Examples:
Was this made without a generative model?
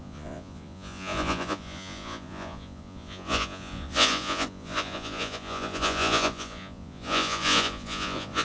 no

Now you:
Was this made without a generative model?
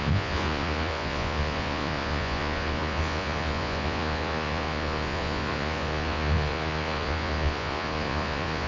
no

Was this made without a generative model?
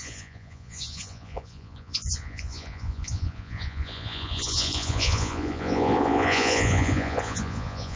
no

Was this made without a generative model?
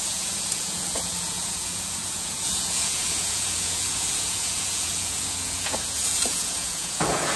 no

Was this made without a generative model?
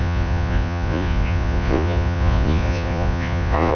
no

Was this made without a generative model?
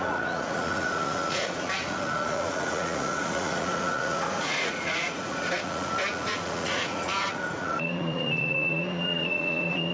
no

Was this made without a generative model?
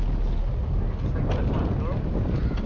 yes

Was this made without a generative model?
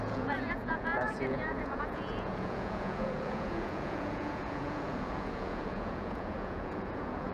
no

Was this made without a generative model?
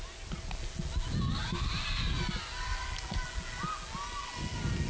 yes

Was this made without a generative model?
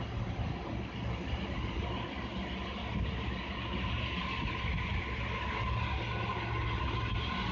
yes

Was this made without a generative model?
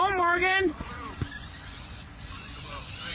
no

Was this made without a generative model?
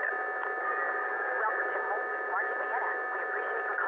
yes